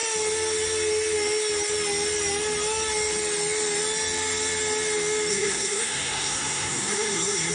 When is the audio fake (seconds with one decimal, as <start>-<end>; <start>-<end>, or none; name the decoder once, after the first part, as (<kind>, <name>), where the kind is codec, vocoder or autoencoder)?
5.3-7.5 (codec, SNAC)